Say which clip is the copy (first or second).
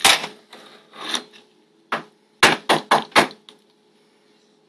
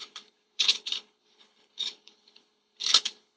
second